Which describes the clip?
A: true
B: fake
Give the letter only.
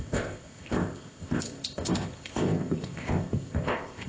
B